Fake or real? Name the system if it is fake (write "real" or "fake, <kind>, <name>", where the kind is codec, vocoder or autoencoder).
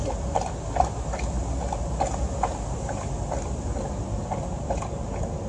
real